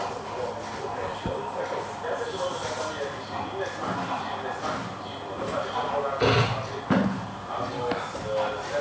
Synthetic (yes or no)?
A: no